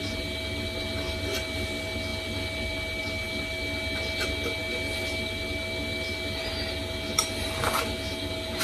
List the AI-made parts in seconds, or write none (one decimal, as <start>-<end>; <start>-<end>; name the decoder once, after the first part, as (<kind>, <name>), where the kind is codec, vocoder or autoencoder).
none